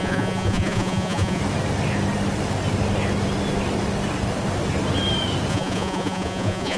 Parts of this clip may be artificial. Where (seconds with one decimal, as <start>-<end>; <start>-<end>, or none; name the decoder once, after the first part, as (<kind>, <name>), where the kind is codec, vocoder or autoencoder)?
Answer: 0.0-1.4 (vocoder, Vocos); 5.5-6.8